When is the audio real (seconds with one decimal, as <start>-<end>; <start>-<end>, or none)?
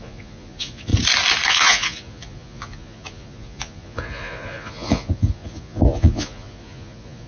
0.9-1.5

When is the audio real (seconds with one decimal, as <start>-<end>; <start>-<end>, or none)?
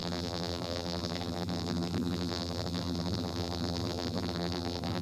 none